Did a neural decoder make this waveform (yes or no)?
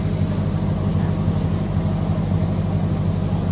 no